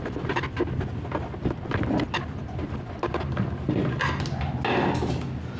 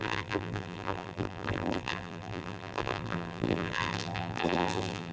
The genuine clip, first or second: first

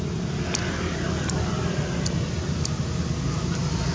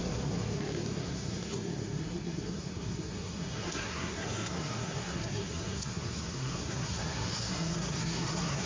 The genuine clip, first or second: first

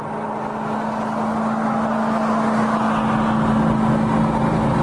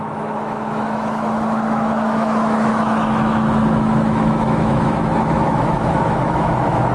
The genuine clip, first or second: first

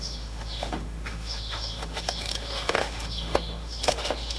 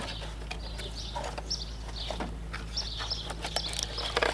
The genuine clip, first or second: second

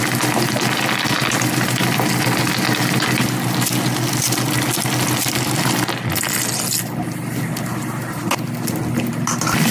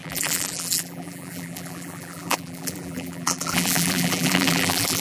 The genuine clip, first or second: first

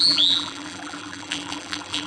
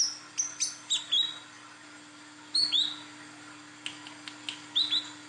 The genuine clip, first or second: second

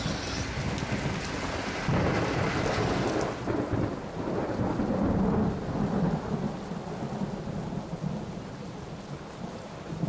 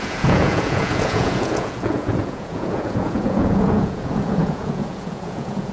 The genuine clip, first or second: first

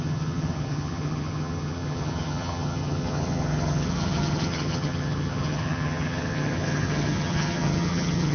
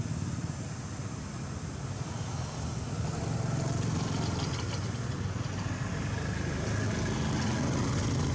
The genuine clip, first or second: second